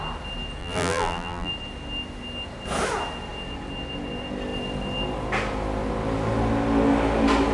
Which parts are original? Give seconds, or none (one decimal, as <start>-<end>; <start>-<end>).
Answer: 0.0-0.6; 1.5-7.5